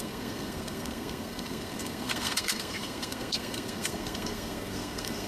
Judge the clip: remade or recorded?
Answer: remade